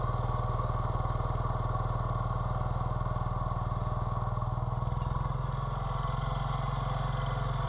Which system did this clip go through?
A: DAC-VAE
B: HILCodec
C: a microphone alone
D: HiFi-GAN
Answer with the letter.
C